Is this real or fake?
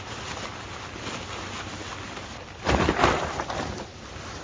real